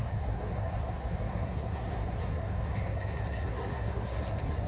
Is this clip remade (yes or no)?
yes